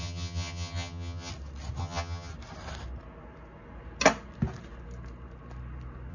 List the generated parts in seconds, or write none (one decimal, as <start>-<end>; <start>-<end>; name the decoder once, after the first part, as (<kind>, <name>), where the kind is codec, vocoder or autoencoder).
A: 0.0-1.3 (vocoder, HiFi-GAN); 1.8-2.3